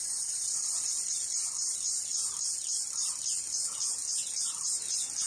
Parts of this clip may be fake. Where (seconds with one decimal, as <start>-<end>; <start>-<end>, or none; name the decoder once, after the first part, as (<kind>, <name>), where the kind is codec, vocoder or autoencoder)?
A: none